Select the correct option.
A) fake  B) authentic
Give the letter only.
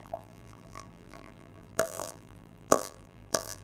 A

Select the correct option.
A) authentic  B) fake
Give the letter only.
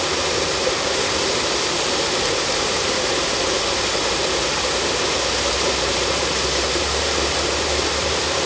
B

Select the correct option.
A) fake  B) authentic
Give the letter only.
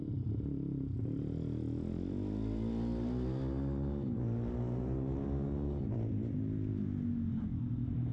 B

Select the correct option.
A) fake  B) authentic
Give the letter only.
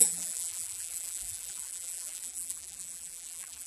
A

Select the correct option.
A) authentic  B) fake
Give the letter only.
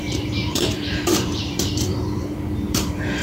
B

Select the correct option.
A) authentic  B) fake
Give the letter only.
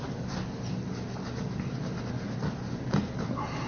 A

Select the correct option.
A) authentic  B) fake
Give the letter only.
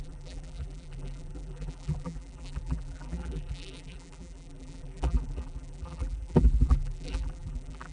B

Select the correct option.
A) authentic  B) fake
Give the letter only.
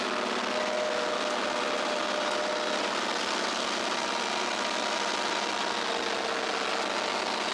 A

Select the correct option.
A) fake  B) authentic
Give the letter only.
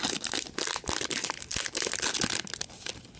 B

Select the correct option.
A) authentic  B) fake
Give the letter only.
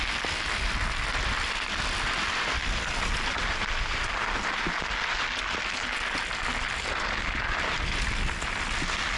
A